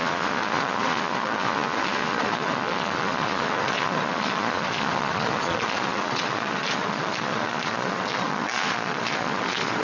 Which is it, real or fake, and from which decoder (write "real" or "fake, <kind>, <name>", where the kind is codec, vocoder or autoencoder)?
fake, vocoder, Vocos